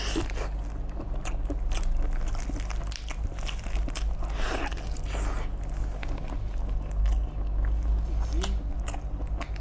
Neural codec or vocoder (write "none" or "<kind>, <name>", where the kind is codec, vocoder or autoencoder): none